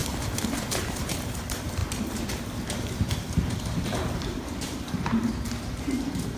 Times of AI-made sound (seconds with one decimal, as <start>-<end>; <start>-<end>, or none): 0.0-6.4